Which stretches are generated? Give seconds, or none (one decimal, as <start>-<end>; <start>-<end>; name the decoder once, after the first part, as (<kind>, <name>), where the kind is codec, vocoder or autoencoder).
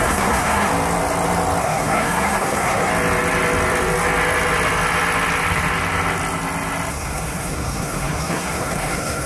0.0-0.7 (codec, SNAC); 1.6-2.9; 6.9-9.3